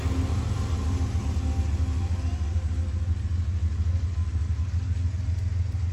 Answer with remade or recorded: recorded